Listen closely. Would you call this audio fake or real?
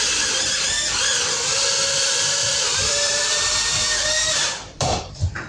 fake